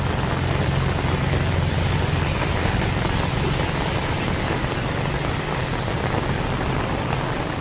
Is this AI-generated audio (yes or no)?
no